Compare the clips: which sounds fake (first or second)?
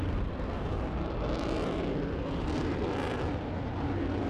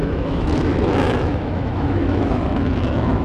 second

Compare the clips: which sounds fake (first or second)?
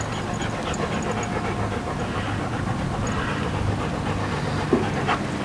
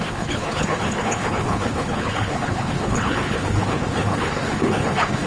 second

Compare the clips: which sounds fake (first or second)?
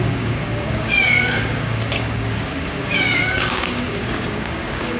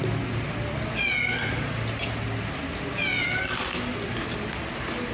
first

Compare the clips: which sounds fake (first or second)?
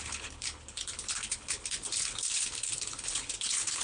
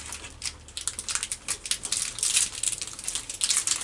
first